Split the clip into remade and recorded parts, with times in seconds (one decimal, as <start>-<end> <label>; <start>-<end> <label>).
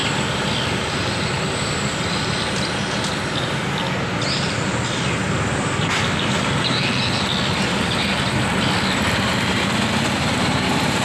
0.0-11.0 recorded